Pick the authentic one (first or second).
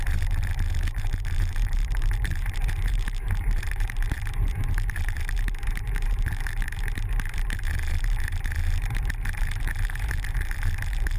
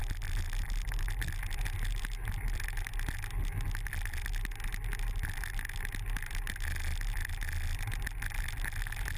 second